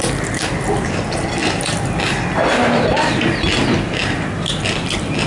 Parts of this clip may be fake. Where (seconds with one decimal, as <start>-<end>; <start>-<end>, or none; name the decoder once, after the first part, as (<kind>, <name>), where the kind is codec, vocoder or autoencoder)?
none